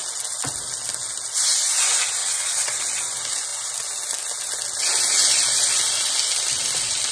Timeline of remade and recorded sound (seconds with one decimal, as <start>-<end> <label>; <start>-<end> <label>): 0.0-2.2 recorded; 2.2-2.8 remade; 2.8-7.1 recorded